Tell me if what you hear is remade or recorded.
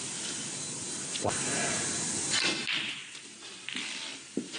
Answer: recorded